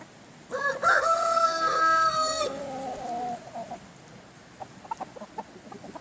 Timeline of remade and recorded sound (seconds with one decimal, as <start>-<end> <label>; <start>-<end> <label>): 0.0-0.9 recorded; 0.9-2.6 remade; 2.6-6.0 recorded